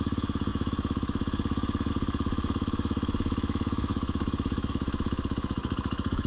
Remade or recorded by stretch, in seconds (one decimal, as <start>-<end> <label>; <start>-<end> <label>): 0.0-6.3 remade

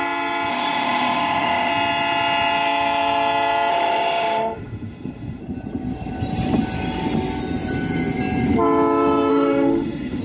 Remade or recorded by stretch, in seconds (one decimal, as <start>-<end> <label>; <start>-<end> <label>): 0.0-0.5 recorded; 0.5-1.7 remade; 1.7-3.7 recorded; 3.7-5.4 remade; 5.4-9.3 recorded; 9.3-10.2 remade

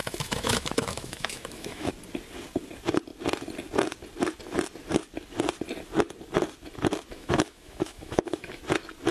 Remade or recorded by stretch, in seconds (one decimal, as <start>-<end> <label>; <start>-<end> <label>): 0.0-1.9 remade; 1.9-7.1 recorded; 7.1-8.6 remade; 8.6-9.1 recorded

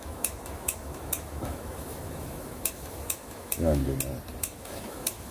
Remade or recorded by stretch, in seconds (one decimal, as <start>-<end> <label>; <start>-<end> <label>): 0.0-3.8 remade; 3.8-4.4 recorded; 4.4-5.3 remade